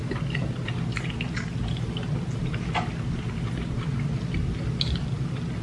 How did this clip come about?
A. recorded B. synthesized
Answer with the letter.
A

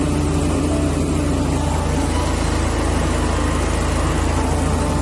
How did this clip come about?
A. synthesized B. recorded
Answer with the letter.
B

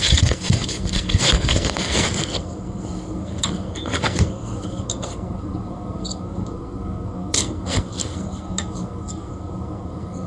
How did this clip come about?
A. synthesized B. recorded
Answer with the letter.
A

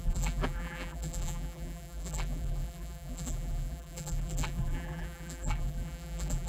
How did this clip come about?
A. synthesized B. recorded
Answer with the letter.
A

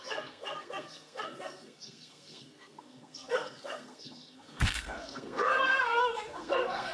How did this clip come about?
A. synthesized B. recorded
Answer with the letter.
A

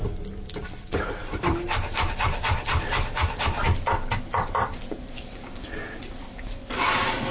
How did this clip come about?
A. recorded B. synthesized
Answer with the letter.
B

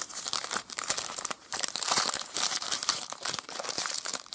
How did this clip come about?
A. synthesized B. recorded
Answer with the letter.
A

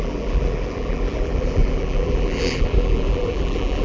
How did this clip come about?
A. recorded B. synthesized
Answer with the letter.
B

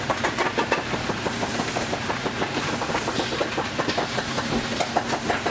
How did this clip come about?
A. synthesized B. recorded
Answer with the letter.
B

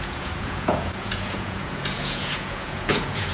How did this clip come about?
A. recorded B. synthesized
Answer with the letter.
B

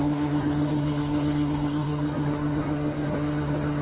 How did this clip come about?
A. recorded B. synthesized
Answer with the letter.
B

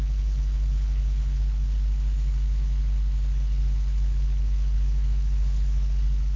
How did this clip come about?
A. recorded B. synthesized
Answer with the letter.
B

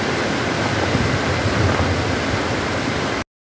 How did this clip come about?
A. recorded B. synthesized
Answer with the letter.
A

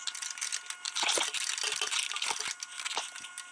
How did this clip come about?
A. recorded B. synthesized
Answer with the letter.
A